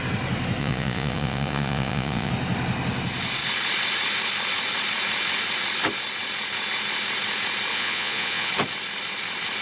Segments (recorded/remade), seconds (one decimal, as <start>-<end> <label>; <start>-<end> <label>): 0.0-0.6 recorded; 0.6-2.3 remade; 2.3-7.7 recorded; 7.7-8.5 remade; 8.5-9.6 recorded